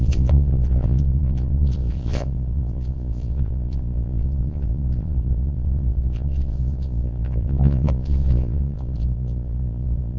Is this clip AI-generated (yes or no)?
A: yes